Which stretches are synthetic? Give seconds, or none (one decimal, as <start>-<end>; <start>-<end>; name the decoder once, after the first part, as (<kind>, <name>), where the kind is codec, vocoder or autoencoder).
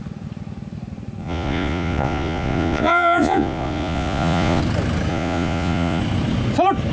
1.2-4.6 (vocoder, Vocos); 5.1-6.0